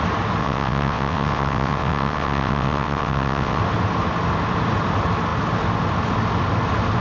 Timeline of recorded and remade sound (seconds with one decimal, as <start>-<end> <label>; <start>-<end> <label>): 0.0-0.4 recorded; 0.4-3.6 remade; 3.6-7.0 recorded